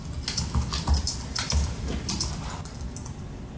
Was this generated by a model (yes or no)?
no